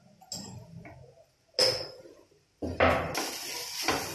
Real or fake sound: real